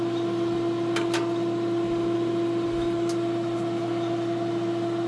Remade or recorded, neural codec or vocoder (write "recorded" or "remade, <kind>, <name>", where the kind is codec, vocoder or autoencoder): recorded